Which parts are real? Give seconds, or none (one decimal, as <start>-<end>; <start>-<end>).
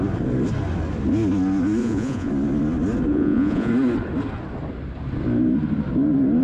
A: 0.0-1.8; 2.3-3.1; 3.7-6.4